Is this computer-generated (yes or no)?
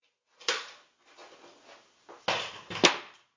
no